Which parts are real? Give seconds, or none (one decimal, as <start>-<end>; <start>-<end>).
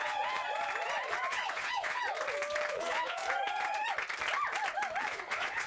0.4-1.1; 2.0-2.7; 3.2-5.0